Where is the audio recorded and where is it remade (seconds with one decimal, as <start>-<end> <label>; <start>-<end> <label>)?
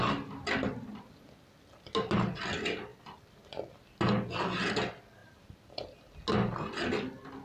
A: 0.0-5.2 recorded; 5.2-6.0 remade; 6.0-7.4 recorded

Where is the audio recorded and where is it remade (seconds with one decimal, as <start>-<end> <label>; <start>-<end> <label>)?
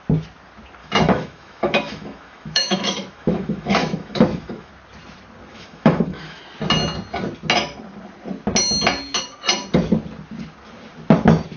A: 0.0-0.8 recorded; 0.8-4.7 remade; 4.7-5.5 recorded; 5.5-6.4 remade; 6.4-11.6 recorded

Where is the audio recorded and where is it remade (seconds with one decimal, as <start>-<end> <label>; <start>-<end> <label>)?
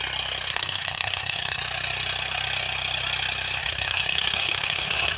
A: 0.0-0.5 recorded; 0.5-1.6 remade; 1.6-3.6 recorded; 3.6-5.2 remade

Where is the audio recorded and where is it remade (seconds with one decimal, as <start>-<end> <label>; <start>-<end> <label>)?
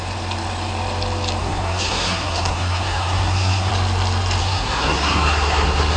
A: 0.0-1.4 recorded; 1.4-3.7 remade; 3.7-4.4 recorded; 4.4-6.0 remade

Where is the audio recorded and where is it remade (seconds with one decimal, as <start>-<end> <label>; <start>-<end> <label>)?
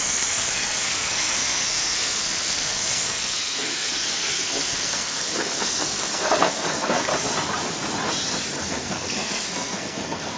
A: 0.0-7.1 remade; 7.1-8.6 recorded; 8.6-10.4 remade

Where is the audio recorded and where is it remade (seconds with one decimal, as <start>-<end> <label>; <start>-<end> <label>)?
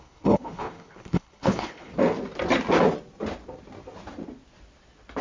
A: 0.0-1.9 remade; 1.9-5.2 recorded